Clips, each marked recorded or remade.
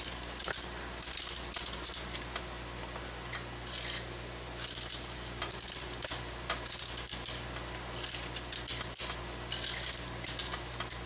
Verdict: recorded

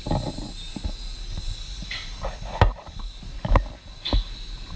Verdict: recorded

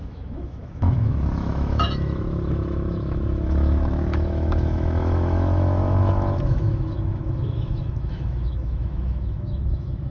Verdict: remade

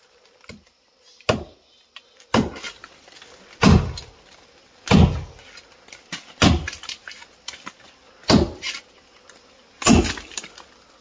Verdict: recorded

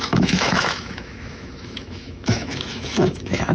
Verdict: remade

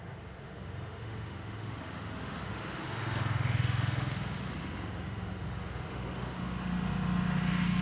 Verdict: remade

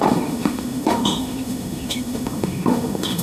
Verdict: remade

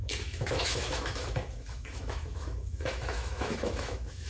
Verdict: remade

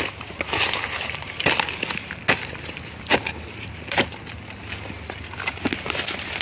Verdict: recorded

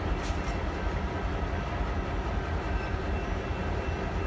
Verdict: recorded